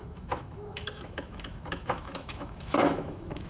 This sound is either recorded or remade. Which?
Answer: remade